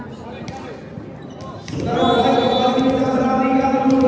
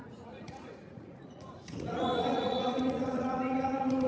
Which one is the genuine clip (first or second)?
first